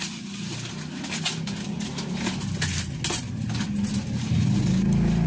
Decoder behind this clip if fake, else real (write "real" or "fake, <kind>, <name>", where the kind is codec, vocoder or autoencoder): real